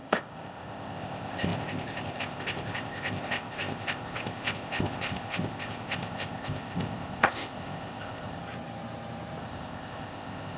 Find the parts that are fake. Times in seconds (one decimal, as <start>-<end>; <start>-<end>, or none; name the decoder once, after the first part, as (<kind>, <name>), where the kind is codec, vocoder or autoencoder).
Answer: 0.0-8.4 (codec, ZipCodec); 9.4-10.6